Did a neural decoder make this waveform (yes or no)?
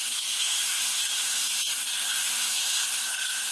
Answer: yes